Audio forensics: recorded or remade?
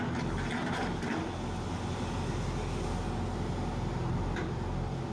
recorded